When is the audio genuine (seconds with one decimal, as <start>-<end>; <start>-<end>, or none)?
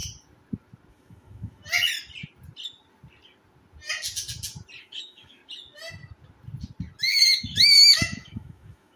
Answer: 0.0-0.9; 1.6-4.8; 5.4-7.0